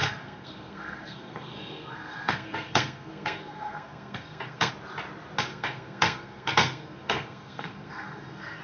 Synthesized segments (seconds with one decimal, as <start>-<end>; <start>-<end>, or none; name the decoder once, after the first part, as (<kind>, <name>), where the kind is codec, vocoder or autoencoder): 0.0-4.7 (codec, SNAC); 5.5-8.6